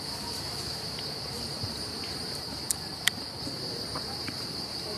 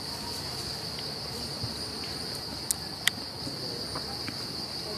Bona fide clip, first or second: second